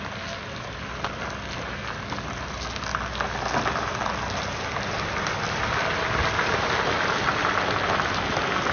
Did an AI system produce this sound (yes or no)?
no